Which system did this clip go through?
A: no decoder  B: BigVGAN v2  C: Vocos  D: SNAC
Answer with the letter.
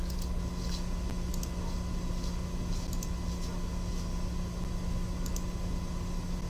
A